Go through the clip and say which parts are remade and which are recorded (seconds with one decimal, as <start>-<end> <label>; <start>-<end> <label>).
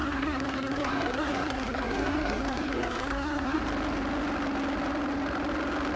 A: 0.0-3.6 remade; 3.6-6.0 recorded